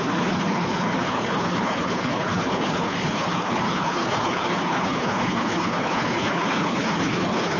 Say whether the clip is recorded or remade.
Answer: remade